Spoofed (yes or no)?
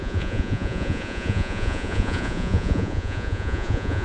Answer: yes